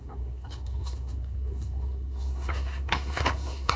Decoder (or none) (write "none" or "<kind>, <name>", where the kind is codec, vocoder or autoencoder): codec, SNAC